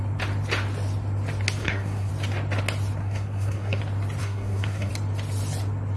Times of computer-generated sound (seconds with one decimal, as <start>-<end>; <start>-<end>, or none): 1.6-2.1; 3.0-3.8; 4.2-4.9